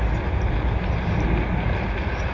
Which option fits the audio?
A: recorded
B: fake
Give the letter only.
A